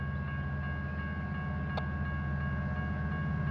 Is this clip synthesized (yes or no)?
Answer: no